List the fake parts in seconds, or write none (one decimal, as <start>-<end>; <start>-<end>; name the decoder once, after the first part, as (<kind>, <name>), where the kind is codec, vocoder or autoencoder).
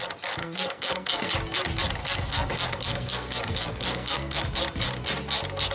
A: 0.4-1.3 (codec, SNAC); 2.0-4.4